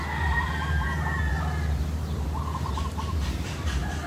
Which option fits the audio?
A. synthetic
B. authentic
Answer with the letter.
B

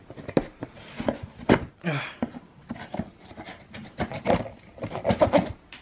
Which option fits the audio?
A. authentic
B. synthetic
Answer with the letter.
A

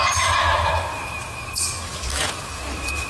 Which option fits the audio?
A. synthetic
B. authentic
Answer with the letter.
A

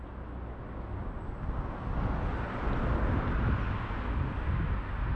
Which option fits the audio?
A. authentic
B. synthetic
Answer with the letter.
A